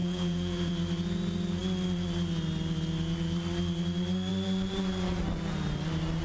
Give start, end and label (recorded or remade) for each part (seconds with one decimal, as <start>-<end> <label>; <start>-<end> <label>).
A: 0.0-0.7 remade; 0.7-6.2 recorded